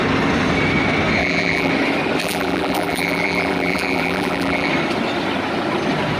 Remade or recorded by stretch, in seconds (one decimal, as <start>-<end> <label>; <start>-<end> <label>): 0.0-1.2 recorded; 1.2-1.7 remade; 1.7-2.2 recorded; 2.2-4.7 remade; 4.7-6.2 recorded